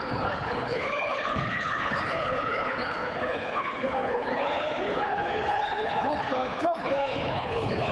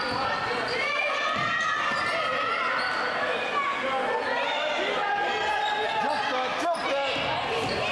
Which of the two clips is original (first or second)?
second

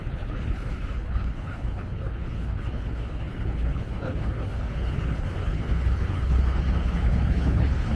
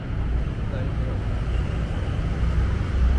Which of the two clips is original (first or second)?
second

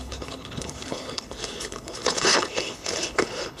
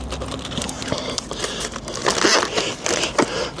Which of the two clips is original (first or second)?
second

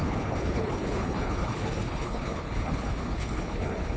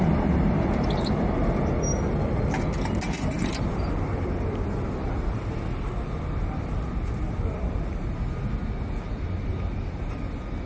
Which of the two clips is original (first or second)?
second